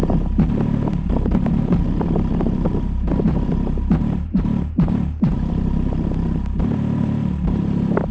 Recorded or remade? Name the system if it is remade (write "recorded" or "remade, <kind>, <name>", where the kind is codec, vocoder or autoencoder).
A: remade, vocoder, BigVGAN v2